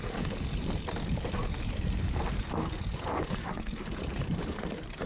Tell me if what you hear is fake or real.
fake